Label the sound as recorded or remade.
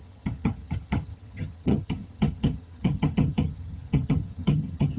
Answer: remade